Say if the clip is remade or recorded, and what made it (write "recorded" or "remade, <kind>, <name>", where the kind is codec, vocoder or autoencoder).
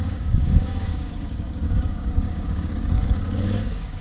remade, codec, DAC